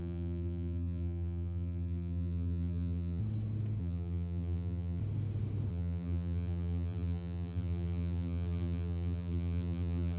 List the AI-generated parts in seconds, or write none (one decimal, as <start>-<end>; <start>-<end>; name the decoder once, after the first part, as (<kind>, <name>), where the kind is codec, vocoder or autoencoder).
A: 0.0-3.2 (vocoder, BigVGAN v2); 3.8-5.0; 5.7-10.2